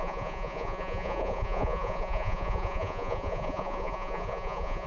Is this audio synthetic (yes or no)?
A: yes